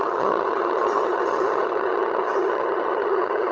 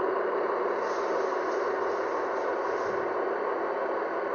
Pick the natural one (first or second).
second